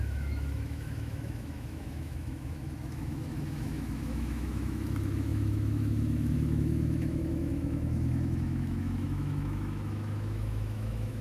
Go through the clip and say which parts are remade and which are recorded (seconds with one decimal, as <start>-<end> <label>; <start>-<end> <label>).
0.0-11.2 remade